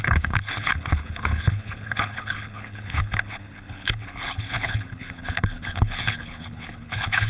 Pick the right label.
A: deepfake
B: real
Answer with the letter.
A